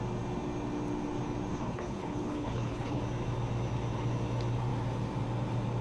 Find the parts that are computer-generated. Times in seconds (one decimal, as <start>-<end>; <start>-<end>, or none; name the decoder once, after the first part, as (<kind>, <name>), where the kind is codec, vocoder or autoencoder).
1.5-3.0 (codec, HILCodec)